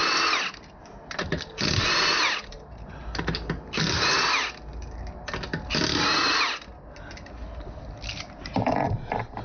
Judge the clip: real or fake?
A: real